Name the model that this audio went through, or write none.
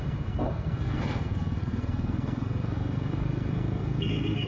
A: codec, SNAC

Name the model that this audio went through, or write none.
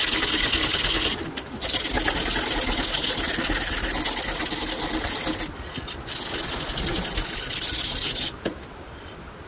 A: none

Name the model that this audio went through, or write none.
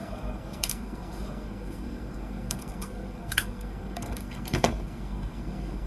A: codec, SNAC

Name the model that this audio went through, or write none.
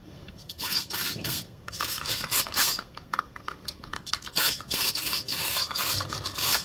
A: codec, SNAC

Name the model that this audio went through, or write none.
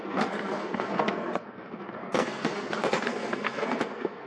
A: codec, SNAC